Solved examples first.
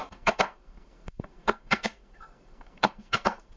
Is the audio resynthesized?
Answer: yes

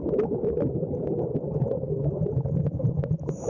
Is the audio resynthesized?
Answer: no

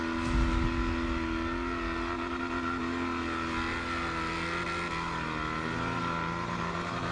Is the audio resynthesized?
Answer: no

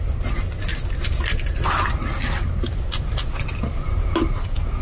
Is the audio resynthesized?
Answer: no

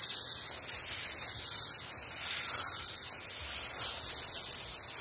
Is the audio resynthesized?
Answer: no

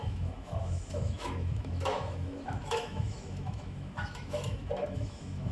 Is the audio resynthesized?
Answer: yes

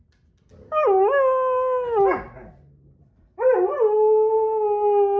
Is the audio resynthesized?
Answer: no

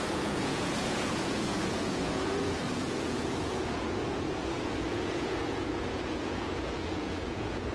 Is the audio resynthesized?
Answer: yes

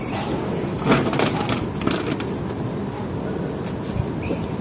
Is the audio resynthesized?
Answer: no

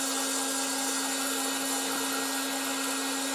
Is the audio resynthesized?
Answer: no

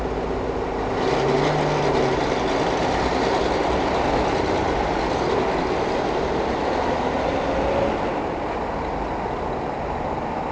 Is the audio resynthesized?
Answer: no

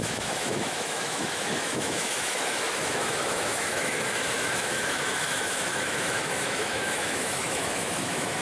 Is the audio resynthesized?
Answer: yes